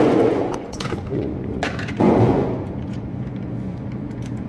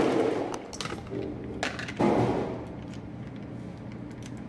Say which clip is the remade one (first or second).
first